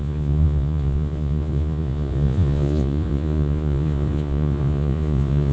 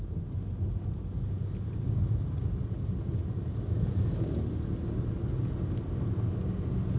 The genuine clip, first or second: second